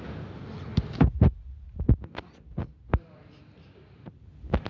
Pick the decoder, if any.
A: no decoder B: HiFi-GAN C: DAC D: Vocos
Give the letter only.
A